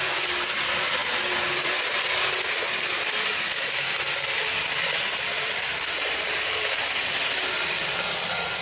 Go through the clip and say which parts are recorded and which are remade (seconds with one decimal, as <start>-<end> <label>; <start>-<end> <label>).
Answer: 0.0-5.3 recorded; 5.3-6.9 remade; 6.9-8.6 recorded